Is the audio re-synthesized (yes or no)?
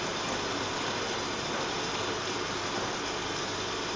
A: no